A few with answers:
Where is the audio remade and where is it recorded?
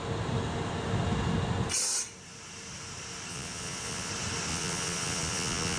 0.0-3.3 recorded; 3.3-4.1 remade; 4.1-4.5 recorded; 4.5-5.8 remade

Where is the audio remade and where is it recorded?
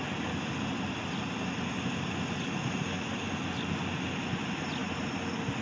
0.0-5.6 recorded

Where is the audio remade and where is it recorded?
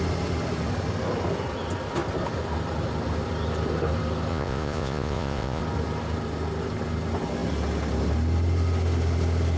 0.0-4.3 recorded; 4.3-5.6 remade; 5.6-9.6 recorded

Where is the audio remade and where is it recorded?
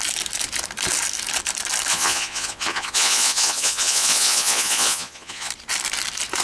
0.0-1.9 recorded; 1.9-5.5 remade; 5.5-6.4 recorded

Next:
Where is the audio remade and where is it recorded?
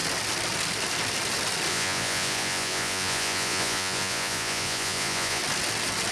0.0-1.7 recorded; 1.7-5.4 remade; 5.4-6.1 recorded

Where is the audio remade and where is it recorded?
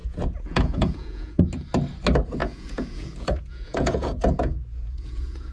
0.0-1.4 remade; 1.4-2.4 recorded; 2.4-5.5 remade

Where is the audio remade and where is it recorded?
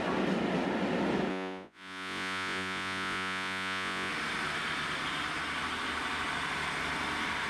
0.0-1.3 recorded; 1.3-4.1 remade; 4.1-7.5 recorded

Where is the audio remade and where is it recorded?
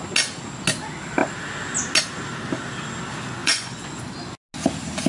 0.0-3.4 recorded; 3.4-4.0 remade; 4.0-5.1 recorded